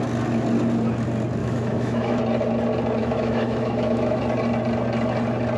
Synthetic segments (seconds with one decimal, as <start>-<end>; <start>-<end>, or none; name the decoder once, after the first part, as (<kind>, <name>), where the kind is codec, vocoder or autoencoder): 1.4-2.2 (autoencoder, DAC-VAE); 3.0-4.2